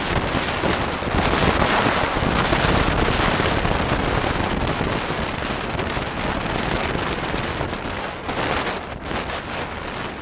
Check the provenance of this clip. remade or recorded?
recorded